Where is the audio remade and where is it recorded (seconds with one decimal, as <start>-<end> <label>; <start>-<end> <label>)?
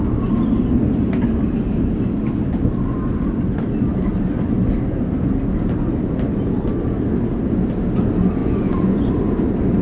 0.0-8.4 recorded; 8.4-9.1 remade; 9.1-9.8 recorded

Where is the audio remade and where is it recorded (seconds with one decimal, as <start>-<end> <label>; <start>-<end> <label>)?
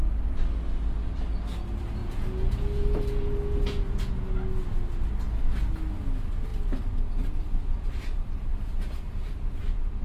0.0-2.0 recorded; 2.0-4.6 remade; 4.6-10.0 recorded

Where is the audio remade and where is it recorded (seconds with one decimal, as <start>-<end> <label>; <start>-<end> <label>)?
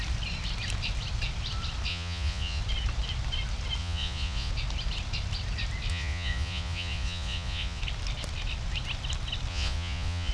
0.0-1.9 recorded; 1.9-2.6 remade; 2.6-3.8 recorded; 3.8-4.5 remade; 4.5-5.9 recorded; 5.9-7.8 remade; 7.8-9.5 recorded; 9.5-10.3 remade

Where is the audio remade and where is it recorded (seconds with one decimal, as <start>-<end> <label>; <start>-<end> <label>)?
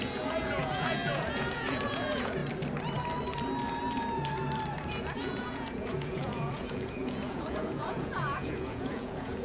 0.0-2.4 remade; 2.4-5.0 recorded; 5.0-9.4 remade